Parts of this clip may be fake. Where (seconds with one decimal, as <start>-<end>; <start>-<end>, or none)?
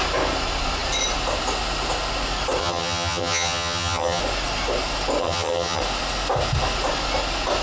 2.6-4.2; 5.2-5.8